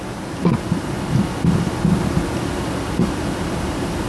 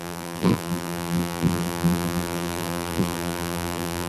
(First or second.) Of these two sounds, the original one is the first